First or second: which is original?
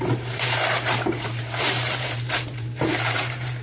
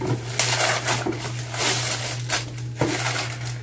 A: second